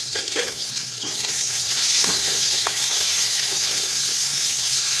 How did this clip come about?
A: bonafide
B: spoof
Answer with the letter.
B